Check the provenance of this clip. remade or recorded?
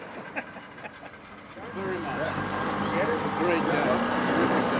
recorded